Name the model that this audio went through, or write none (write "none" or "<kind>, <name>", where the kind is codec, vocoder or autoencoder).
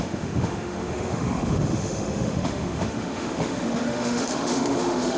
autoencoder, DAC-VAE